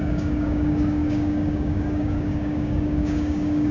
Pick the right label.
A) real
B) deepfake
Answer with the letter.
B